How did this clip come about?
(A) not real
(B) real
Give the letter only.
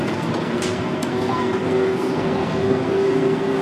A